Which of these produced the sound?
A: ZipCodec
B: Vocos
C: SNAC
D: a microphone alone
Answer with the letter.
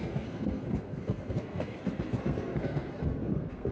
C